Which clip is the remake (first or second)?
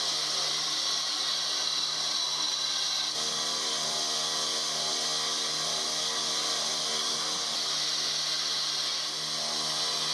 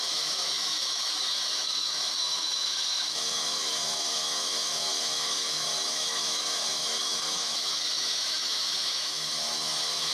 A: second